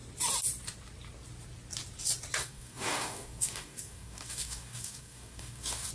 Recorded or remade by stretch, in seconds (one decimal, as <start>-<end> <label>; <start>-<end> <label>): 0.0-2.4 recorded; 2.4-5.9 remade